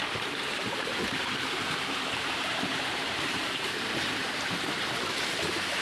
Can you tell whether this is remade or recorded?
remade